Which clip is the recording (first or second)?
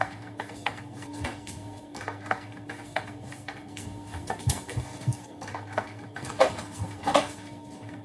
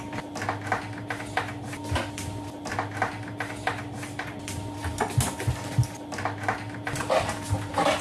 second